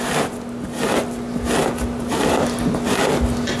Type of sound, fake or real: real